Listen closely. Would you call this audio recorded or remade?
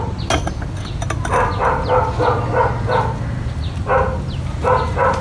recorded